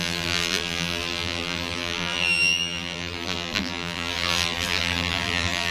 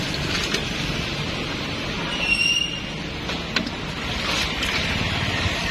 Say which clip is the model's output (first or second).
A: first